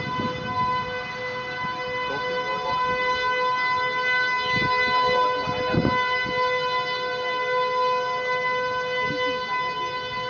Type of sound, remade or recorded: recorded